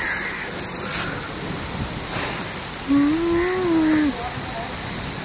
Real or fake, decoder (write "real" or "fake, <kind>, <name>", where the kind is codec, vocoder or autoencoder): real